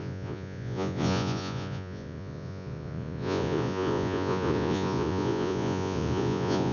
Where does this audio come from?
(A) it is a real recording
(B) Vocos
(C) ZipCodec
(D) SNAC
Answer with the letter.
B